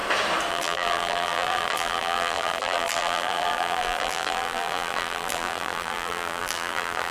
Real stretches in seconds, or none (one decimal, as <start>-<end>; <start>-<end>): 0.0-0.5